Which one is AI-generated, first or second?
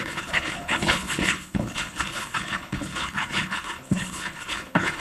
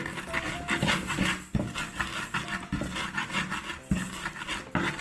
first